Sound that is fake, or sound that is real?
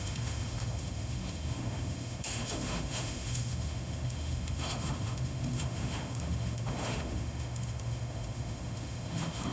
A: fake